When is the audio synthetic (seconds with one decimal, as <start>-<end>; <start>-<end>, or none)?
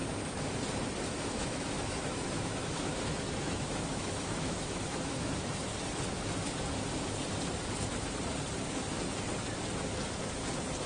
1.0-5.7